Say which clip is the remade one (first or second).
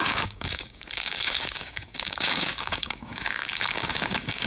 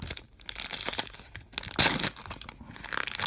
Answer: first